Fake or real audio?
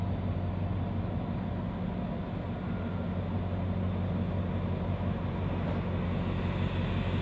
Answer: real